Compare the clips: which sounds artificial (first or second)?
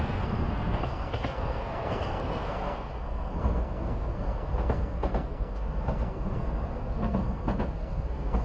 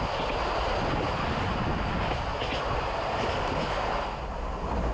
first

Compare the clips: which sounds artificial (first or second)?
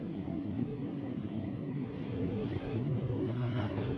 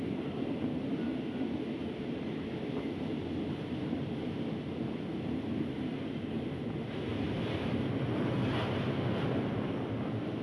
first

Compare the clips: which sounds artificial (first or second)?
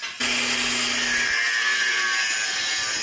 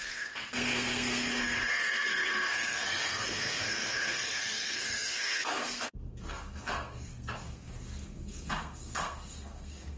second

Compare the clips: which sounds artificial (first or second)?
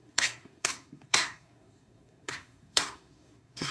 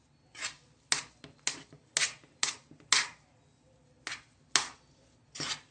first